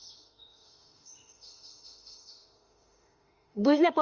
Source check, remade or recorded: remade